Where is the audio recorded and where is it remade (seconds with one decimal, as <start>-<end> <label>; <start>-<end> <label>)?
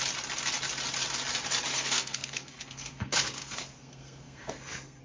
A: 0.0-1.7 recorded; 1.7-5.0 remade